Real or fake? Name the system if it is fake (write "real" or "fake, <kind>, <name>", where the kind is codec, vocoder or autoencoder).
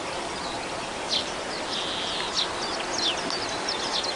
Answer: real